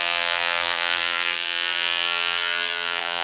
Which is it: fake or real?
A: fake